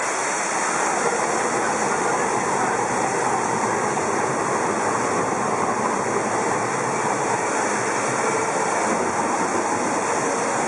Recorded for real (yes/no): yes